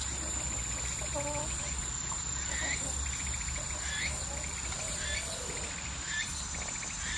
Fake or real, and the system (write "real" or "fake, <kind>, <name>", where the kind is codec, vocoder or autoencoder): real